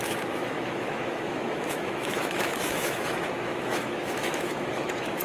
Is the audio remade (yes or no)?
yes